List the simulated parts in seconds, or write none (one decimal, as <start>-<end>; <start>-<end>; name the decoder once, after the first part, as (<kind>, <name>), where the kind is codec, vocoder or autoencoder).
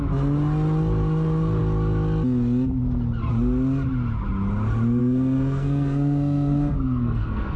5.0-7.6 (codec, SNAC)